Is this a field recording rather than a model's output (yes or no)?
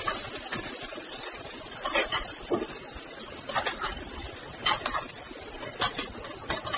yes